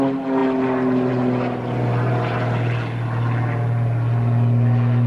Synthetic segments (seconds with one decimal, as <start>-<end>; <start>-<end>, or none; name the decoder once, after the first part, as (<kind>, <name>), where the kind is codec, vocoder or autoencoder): none